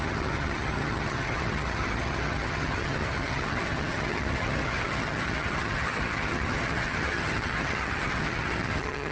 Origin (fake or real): fake